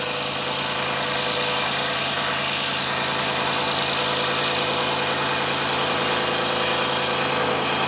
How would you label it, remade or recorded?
recorded